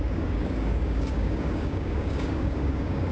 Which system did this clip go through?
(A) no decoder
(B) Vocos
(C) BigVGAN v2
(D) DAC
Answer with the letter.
D